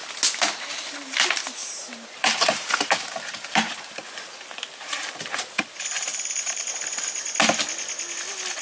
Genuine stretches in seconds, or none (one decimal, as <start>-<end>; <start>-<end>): 0.0-1.6; 5.4-6.1; 6.7-8.6